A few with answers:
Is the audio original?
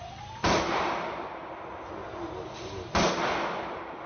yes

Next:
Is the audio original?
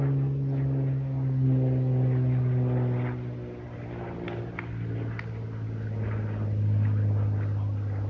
yes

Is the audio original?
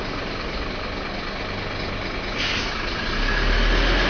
yes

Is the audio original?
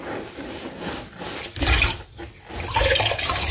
yes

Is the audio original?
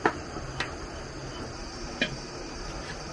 yes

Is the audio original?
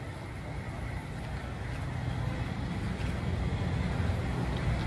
yes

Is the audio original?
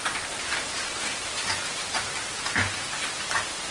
yes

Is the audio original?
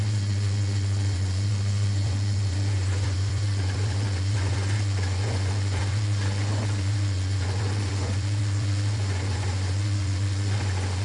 no